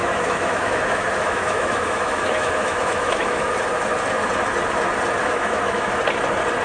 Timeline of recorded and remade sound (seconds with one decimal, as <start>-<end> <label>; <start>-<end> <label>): 0.0-3.5 remade; 3.5-5.2 recorded; 5.2-6.0 remade; 6.0-6.6 recorded